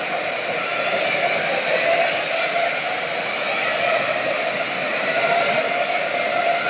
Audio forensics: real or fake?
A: real